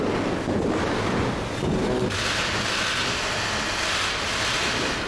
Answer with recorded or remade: recorded